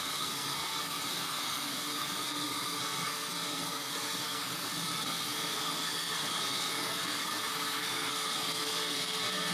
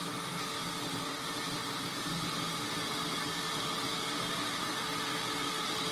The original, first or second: second